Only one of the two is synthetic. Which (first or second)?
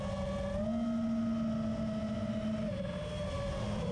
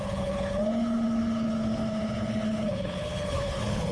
second